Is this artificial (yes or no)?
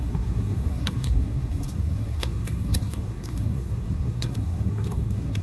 yes